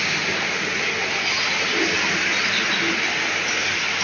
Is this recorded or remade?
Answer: recorded